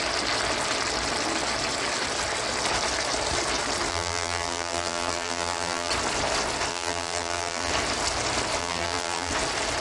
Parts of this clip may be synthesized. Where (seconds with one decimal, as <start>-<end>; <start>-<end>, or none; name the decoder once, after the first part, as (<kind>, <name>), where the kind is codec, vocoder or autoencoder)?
3.9-5.9 (vocoder, BigVGAN v2); 6.7-7.7; 8.6-9.3